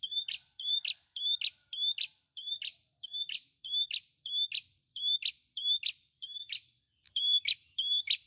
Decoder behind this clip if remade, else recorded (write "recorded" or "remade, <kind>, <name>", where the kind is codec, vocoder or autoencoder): remade, vocoder, BigVGAN v2